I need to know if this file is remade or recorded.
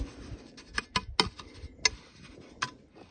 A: recorded